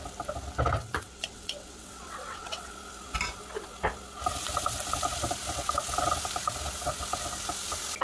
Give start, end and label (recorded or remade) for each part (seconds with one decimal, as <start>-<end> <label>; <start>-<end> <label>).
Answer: 0.0-0.8 recorded; 0.8-2.7 remade; 2.7-8.0 recorded